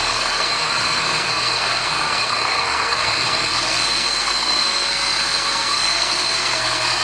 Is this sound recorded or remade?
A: remade